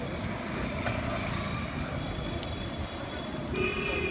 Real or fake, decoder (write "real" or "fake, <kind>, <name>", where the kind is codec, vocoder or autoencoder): real